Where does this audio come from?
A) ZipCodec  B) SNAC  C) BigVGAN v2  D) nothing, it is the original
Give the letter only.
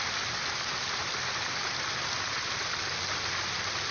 D